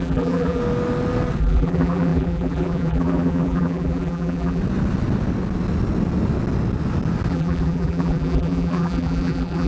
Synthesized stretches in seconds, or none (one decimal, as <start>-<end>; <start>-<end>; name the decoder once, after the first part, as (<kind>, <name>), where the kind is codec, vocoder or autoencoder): 0.0-0.6 (vocoder, BigVGAN v2); 1.4-4.6; 7.3-9.7